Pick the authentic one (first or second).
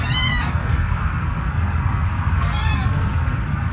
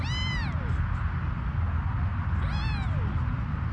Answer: second